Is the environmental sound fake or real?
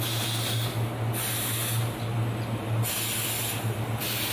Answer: real